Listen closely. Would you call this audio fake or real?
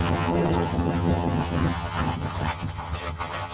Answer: fake